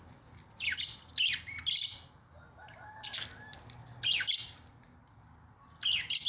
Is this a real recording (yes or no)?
yes